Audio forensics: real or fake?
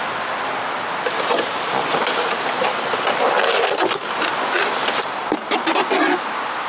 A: real